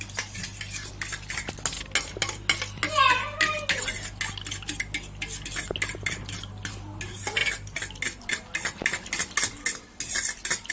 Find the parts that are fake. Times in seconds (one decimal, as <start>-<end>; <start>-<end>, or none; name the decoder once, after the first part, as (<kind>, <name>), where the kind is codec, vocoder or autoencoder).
none